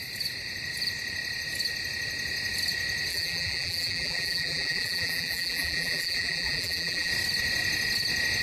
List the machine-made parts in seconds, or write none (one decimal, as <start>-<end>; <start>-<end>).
3.1-7.1